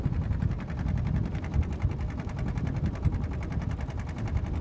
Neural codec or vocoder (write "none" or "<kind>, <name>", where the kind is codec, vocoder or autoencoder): none